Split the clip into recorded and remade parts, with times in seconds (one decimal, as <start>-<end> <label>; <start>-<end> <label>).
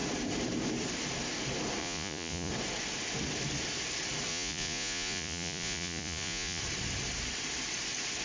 0.0-1.8 recorded; 1.8-2.5 remade; 2.5-4.3 recorded; 4.3-6.6 remade; 6.6-8.2 recorded